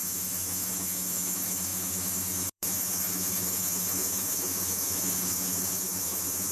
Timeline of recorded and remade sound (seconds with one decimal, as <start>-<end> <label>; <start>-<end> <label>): 0.0-6.5 remade